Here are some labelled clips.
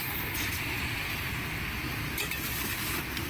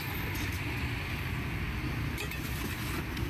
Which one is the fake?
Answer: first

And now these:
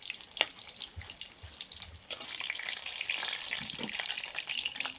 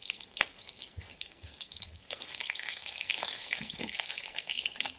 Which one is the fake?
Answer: second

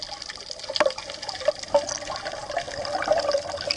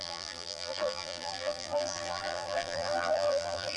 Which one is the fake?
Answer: second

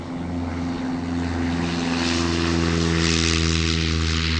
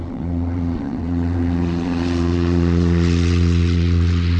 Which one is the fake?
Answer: second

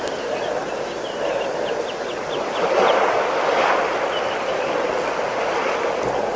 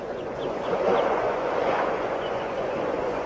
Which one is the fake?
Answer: second